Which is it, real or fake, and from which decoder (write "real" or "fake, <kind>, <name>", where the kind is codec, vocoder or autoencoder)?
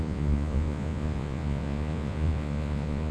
fake, vocoder, Vocos